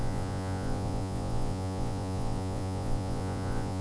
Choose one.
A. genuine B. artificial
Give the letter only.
B